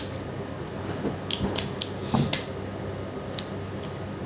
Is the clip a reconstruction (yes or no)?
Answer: no